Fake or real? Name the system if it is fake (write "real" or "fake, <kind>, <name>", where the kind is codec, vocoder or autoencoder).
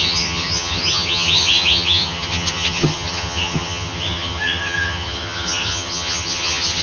fake, vocoder, HiFi-GAN